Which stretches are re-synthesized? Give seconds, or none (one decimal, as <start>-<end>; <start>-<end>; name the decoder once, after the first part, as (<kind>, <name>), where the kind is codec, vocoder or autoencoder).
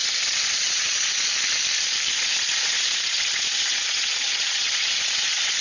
0.0-1.3 (vocoder, Vocos); 2.1-5.6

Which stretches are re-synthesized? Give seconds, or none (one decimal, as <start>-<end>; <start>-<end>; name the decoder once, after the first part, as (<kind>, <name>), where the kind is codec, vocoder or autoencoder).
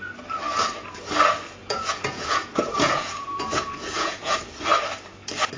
1.6-4.4 (vocoder, Vocos)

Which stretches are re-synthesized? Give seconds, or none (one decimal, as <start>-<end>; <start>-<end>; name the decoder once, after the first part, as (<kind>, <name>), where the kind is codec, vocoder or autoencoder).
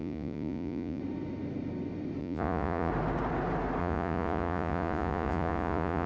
0.0-1.0 (vocoder, Vocos); 2.2-2.9; 3.8-6.1